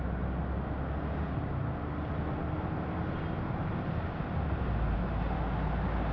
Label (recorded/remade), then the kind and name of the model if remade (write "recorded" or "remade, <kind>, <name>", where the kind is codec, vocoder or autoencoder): recorded